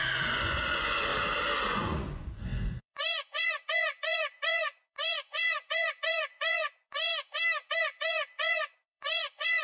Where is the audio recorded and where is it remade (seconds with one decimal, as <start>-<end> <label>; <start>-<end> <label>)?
0.0-1.1 remade; 1.1-1.7 recorded; 1.7-7.1 remade; 7.1-7.8 recorded; 7.8-9.6 remade